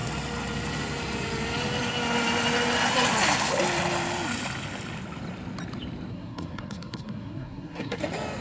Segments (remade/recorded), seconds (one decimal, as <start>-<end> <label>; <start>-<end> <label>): 0.0-6.1 recorded; 6.1-8.0 remade; 8.0-8.4 recorded